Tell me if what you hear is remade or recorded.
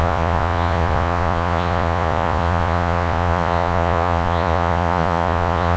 remade